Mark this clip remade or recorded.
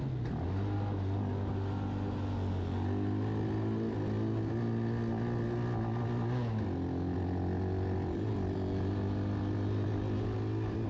recorded